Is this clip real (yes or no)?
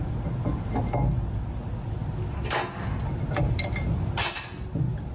yes